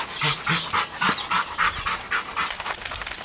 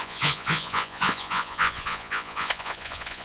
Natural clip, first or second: first